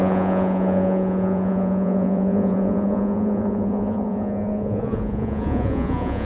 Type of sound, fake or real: fake